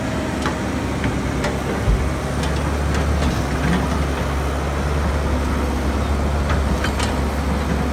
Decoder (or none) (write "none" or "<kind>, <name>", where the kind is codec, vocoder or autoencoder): none